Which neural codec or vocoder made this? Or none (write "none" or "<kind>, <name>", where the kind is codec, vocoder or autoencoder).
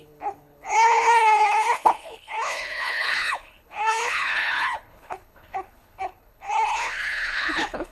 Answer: codec, HILCodec